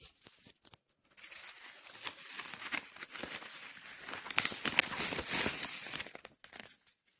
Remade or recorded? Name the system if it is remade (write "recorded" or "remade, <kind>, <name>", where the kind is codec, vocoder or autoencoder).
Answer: recorded